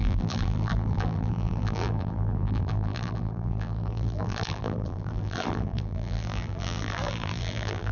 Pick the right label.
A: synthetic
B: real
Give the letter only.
A